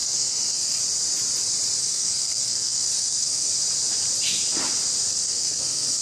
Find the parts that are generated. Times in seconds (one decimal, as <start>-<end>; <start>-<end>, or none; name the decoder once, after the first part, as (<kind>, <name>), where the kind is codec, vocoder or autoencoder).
0.0-0.8 (codec, SNAC); 1.8-3.5; 5.1-6.0